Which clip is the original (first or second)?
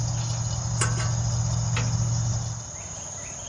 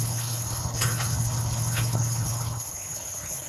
first